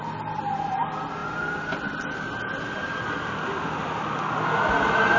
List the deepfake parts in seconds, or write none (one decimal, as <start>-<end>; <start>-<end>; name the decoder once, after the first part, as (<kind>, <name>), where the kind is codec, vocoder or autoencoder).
none